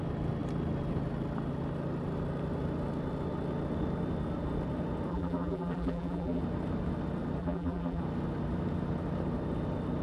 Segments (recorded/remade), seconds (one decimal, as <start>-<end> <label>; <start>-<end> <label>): 0.0-5.1 recorded; 5.1-6.4 remade; 6.4-7.4 recorded; 7.4-8.0 remade; 8.0-10.0 recorded